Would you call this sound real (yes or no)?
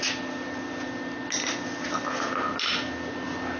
yes